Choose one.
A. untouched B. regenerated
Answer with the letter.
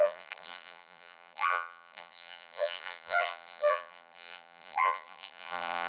B